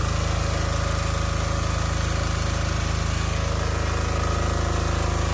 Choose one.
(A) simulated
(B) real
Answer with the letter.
B